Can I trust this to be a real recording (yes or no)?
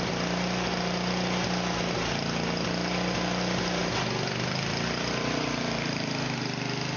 yes